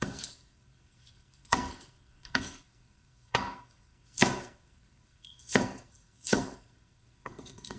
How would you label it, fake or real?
fake